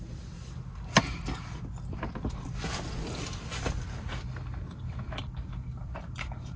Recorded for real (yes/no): yes